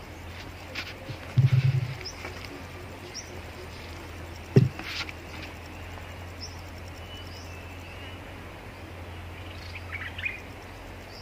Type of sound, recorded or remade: recorded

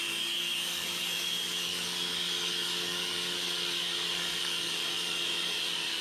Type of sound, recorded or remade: remade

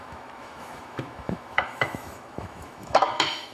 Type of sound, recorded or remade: remade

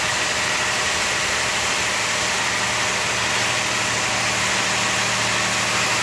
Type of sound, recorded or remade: recorded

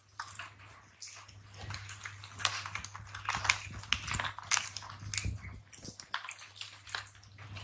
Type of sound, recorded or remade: recorded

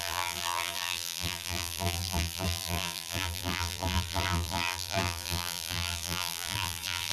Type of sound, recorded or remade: remade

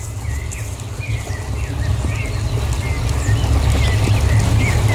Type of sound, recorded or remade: recorded